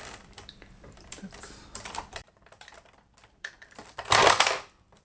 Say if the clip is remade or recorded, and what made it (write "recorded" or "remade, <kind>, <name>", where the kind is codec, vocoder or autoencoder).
remade, vocoder, BigVGAN v2